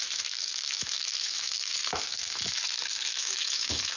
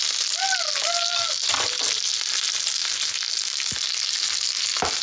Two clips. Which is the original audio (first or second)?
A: second